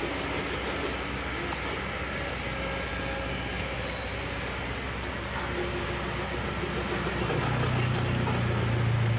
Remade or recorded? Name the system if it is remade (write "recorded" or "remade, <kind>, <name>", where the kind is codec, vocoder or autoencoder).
recorded